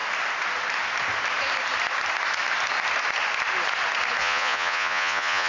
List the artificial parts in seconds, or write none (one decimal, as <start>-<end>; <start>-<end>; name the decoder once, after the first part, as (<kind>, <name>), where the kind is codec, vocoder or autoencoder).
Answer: 4.2-5.5 (vocoder, Vocos)